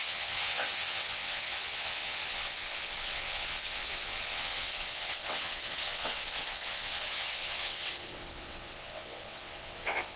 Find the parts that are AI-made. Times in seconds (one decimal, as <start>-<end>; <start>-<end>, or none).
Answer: 0.0-10.2